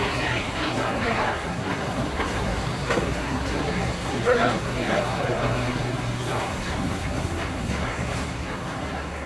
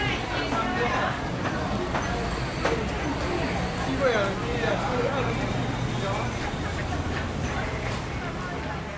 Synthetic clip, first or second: first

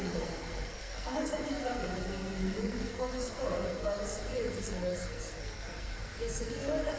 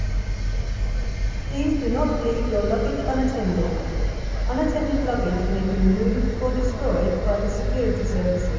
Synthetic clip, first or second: first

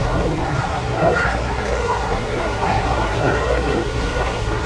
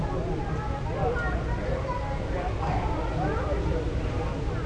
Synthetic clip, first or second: first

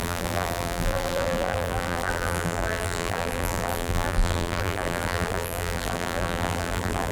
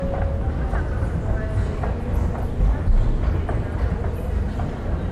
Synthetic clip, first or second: first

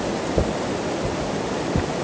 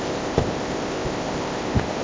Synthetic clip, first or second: second